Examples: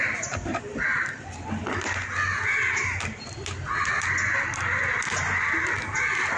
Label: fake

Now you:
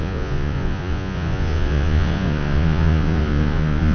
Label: fake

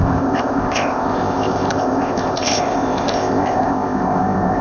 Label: fake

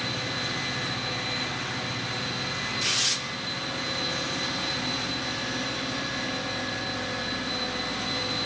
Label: real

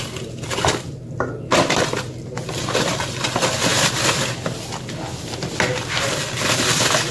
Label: real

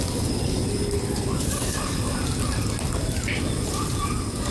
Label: real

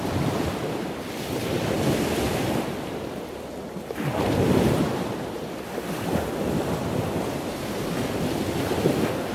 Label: real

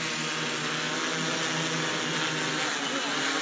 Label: real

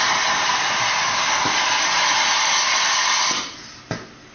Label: real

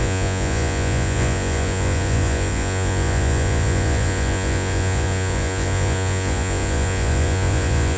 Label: fake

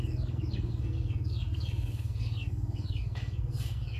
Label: fake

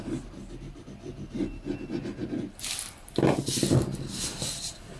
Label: real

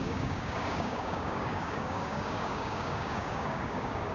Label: fake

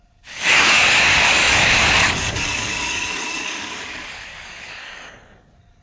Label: fake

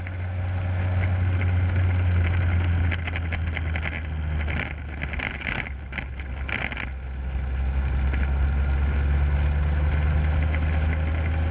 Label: real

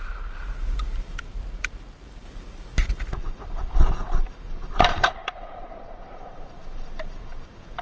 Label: fake